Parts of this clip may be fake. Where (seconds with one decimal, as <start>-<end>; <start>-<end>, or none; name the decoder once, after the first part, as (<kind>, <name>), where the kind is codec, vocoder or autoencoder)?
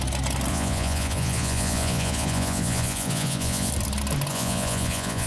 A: 0.5-3.7 (vocoder, Vocos); 4.3-5.3